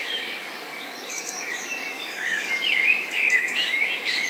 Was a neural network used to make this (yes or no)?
yes